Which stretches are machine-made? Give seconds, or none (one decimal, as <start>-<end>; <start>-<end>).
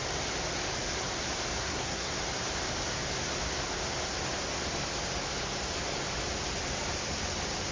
1.6-2.1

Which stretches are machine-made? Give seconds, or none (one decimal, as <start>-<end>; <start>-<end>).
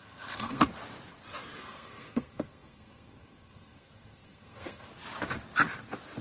0.0-0.7; 1.6-4.9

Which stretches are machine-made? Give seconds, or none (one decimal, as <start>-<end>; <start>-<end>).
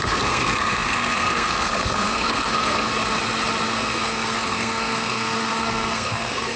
0.0-2.9; 3.7-6.6